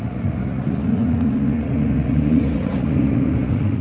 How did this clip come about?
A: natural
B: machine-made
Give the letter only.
B